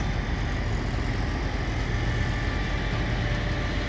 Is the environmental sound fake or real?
real